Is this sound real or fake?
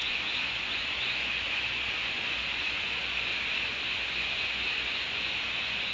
fake